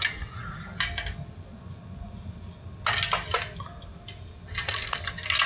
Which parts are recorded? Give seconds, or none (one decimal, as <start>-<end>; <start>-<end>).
0.0-1.5; 2.1-5.5